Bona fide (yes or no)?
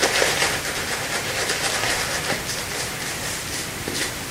yes